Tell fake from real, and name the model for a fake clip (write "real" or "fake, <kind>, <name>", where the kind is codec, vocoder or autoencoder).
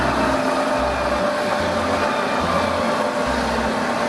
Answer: real